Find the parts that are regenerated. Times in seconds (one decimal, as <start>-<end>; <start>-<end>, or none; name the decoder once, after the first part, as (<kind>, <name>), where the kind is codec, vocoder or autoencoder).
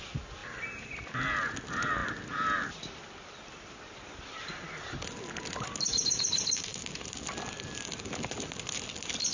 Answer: none